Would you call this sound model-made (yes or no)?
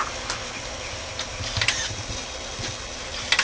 no